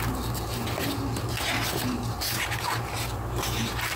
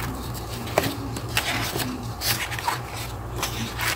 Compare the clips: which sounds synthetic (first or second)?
second